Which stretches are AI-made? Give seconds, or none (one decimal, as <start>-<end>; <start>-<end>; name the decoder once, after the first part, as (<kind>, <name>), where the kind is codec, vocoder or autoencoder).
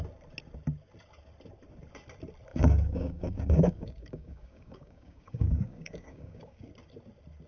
2.5-6.7 (codec, DAC)